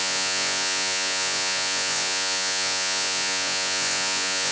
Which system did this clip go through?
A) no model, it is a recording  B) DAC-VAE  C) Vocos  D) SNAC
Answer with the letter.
C